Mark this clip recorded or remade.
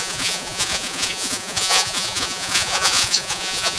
remade